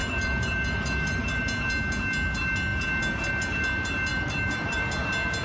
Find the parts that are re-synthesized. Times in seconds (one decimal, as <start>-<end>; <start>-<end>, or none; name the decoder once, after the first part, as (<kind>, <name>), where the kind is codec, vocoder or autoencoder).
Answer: 0.0-1.4 (vocoder, BigVGAN v2); 4.1-4.8